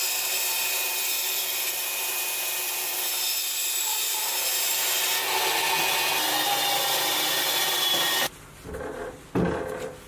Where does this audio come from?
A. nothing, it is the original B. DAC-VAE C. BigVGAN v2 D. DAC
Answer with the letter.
A